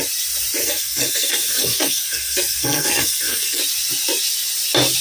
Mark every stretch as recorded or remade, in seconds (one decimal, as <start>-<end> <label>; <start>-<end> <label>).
0.0-0.6 recorded; 0.6-3.6 remade; 3.6-5.0 recorded